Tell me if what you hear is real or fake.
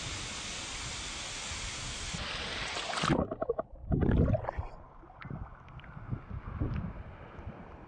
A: real